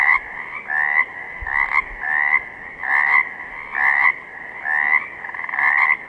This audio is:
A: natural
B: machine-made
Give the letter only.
A